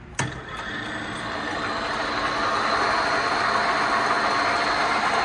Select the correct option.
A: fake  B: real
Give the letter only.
B